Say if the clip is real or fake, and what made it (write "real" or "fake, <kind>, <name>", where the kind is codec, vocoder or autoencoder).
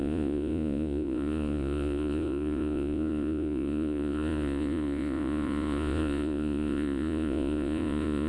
fake, vocoder, Vocos